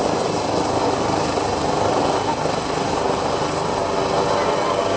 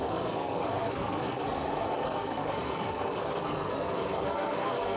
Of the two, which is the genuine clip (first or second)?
first